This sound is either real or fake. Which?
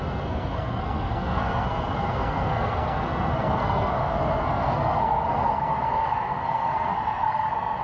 fake